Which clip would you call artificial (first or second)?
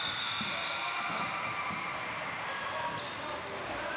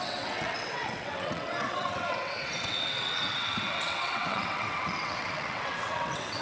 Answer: second